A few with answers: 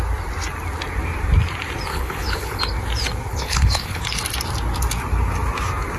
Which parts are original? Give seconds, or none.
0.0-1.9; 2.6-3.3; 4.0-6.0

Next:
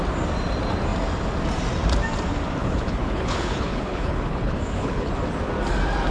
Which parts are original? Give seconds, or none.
0.0-2.6; 5.1-6.1

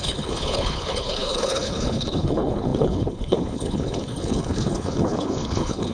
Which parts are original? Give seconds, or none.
none

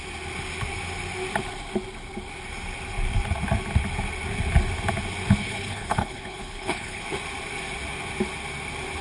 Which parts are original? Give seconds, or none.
0.0-5.4; 7.0-9.0

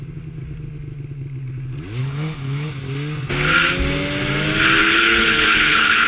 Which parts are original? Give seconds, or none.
0.0-2.0; 2.7-4.8